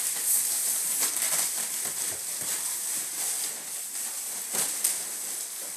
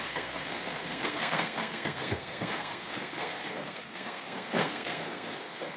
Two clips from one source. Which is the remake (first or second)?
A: second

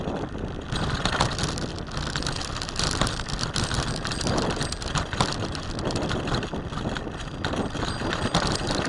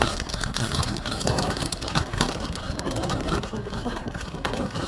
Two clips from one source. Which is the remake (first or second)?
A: second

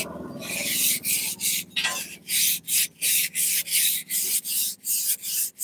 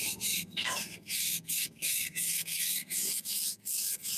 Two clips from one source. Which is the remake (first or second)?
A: second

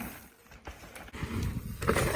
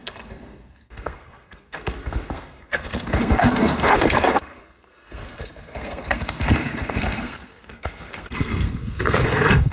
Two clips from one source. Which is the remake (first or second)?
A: second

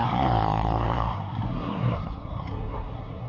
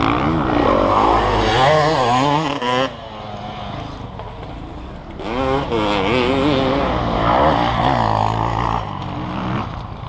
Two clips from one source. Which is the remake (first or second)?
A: first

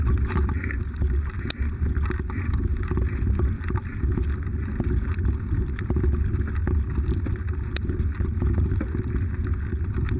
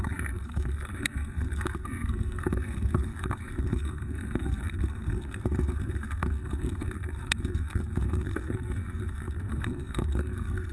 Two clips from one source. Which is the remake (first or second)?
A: second